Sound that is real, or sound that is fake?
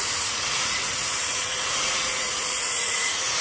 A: fake